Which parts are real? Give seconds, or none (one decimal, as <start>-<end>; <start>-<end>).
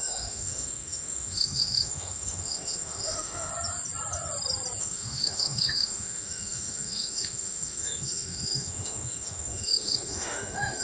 3.5-4.8